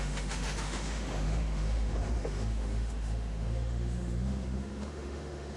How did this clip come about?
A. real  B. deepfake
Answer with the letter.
B